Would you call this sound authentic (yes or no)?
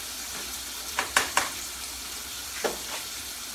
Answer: yes